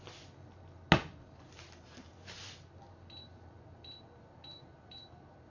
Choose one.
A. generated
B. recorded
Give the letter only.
B